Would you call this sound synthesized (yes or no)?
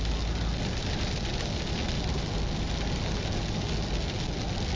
no